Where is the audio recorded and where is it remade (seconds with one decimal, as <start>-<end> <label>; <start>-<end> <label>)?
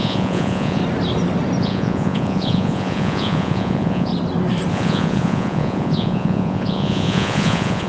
0.0-0.8 remade; 0.8-1.6 recorded; 1.6-4.1 remade; 4.1-4.7 recorded; 4.7-7.9 remade